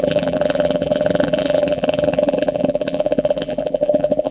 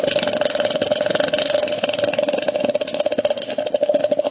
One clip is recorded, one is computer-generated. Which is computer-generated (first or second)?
first